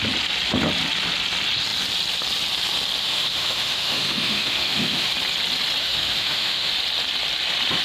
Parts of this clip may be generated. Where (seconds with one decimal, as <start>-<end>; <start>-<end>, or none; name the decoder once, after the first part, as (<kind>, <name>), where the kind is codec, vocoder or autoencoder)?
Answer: 3.0-5.1 (autoencoder, DAC-VAE); 5.8-6.7